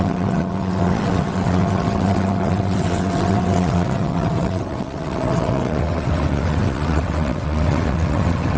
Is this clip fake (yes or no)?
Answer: yes